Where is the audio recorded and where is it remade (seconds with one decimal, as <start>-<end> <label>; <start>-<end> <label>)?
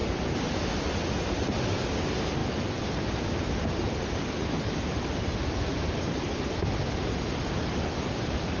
0.0-8.6 recorded